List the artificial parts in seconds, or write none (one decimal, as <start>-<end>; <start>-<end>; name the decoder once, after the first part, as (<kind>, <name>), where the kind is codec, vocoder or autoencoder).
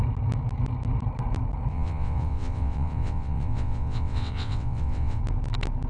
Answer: 1.7-5.2 (vocoder, WaveNeXt)